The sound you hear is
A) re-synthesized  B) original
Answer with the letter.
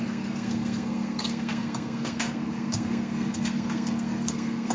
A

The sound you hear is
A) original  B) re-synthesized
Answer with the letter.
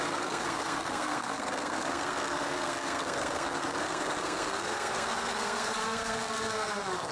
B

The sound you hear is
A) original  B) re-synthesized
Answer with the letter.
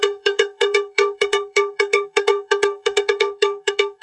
B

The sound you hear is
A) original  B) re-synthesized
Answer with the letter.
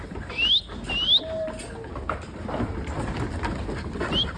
A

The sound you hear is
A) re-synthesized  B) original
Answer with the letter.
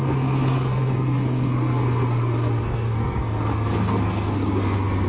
A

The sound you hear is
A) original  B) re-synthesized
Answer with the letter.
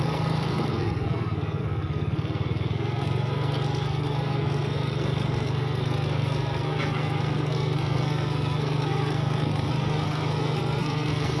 B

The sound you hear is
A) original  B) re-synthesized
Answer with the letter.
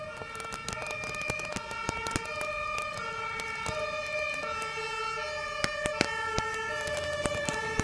A